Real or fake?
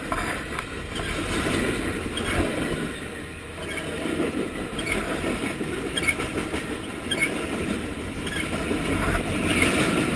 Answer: real